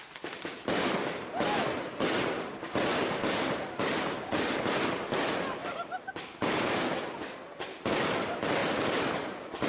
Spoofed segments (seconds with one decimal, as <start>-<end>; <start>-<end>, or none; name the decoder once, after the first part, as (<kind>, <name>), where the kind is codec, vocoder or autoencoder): 0.0-1.6 (vocoder, BigVGAN v2); 5.6-6.3